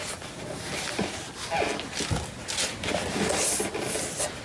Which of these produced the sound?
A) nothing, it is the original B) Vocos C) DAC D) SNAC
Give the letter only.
A